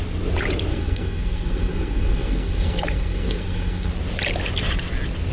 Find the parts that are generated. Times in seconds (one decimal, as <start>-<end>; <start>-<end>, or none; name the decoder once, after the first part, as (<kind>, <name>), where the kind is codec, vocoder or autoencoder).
0.7-3.9 (codec, SNAC)